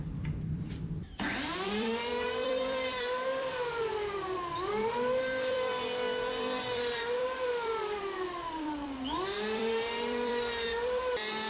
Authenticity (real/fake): fake